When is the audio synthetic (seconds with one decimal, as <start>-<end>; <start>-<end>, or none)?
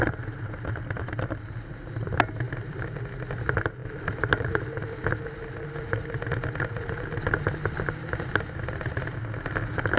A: 3.8-4.5